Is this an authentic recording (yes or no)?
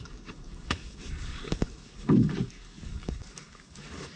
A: no